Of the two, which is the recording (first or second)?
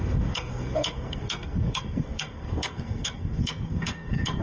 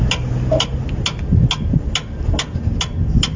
second